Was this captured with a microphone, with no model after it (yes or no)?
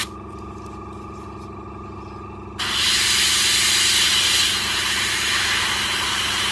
yes